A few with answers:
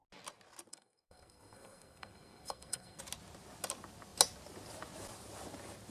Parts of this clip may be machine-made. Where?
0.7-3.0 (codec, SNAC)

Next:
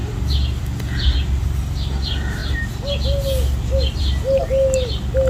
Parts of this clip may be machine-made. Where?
none

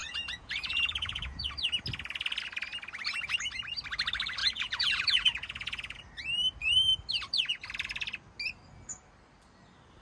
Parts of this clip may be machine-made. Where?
0.0-1.5 (vocoder, Vocos); 4.4-6.0